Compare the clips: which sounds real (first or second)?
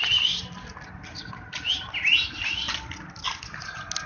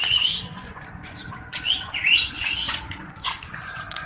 first